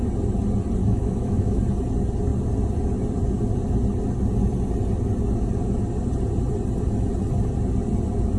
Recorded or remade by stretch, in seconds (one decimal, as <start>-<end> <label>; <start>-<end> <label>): 0.0-0.8 recorded; 0.8-1.6 remade; 1.6-8.4 recorded